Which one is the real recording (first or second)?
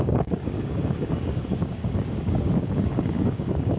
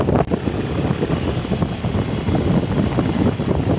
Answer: second